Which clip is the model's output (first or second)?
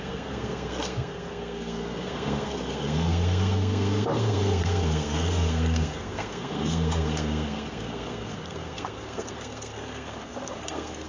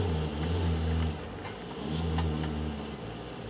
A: first